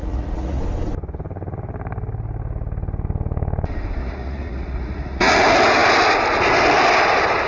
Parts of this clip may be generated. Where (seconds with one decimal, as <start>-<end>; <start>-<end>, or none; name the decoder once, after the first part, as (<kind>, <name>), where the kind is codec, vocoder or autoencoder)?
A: 0.0-0.6 (vocoder, Vocos); 4.0-5.3